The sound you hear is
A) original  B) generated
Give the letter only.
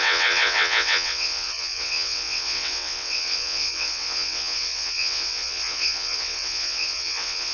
B